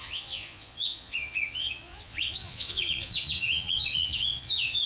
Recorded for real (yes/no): no